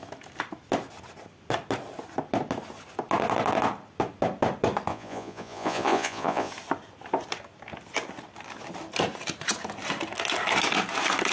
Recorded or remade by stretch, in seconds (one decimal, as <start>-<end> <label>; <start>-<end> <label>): 0.0-4.9 recorded; 4.9-6.5 remade; 6.5-11.3 recorded